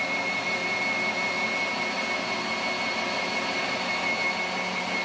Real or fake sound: real